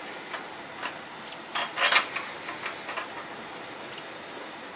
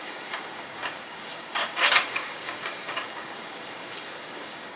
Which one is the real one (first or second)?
first